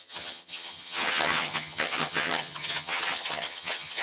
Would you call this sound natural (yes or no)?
no